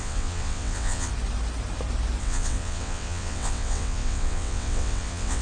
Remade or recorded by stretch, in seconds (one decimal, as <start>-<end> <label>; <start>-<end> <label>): 0.0-1.1 remade; 1.1-2.2 recorded; 2.2-5.4 remade